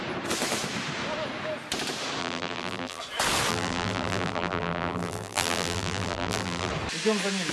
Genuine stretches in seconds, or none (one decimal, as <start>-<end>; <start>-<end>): 0.0-2.2; 3.0-3.5; 6.7-7.5